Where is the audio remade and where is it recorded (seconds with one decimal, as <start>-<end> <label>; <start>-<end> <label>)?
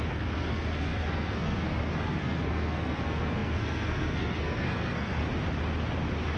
0.0-5.2 remade; 5.2-6.4 recorded